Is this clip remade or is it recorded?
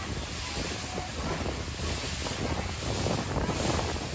recorded